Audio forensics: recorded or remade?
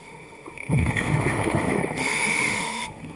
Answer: remade